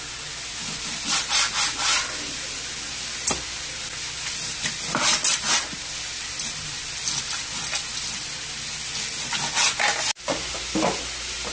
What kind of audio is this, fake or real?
real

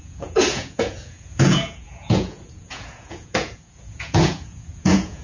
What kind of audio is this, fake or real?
fake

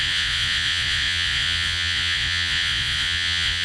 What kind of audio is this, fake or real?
fake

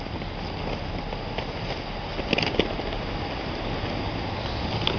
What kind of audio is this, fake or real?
real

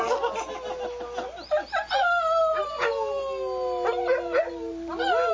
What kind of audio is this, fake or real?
real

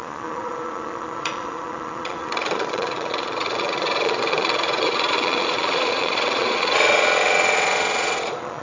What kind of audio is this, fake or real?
fake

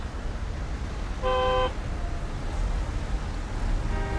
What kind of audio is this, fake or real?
real